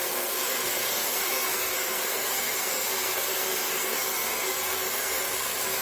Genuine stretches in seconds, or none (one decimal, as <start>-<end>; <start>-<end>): none